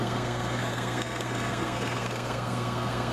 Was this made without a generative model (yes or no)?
no